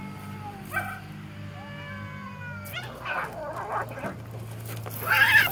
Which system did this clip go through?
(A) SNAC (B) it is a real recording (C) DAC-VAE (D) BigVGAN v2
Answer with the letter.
B